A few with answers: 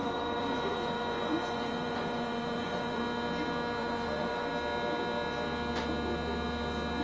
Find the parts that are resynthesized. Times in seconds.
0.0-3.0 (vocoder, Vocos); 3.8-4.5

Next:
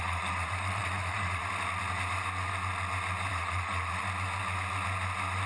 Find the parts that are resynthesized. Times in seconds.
0.0-1.4 (vocoder, Vocos); 3.3-4.0

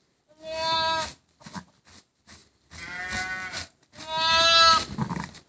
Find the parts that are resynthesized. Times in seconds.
none

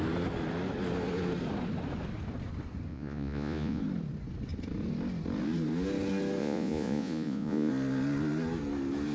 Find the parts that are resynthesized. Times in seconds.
2.9-3.8 (vocoder, Vocos); 6.4-7.7

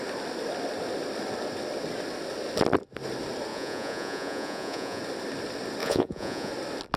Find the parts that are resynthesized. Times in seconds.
3.5-5.0 (vocoder, Vocos); 5.8-6.5

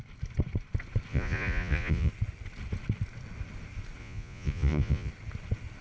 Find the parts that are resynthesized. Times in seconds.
1.1-2.1 (vocoder, Vocos); 4.0-5.1